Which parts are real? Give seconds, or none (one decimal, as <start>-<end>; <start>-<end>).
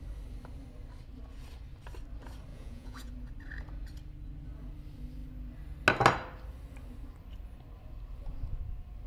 0.0-2.5; 3.1-9.1